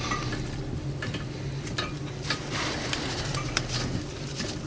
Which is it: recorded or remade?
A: recorded